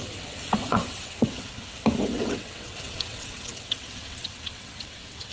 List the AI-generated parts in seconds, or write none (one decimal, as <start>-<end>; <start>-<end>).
0.0-1.5; 2.1-5.3